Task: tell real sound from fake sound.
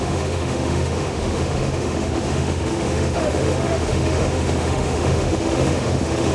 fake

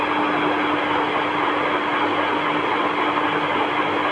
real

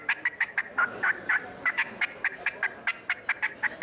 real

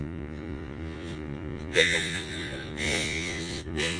fake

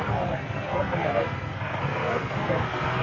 fake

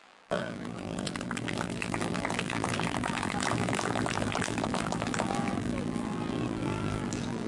fake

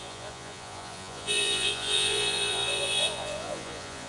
fake